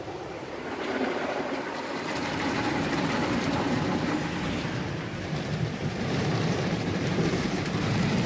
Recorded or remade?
remade